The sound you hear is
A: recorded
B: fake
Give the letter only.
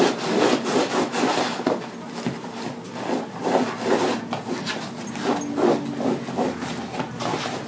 A